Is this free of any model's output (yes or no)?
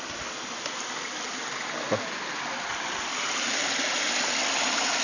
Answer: yes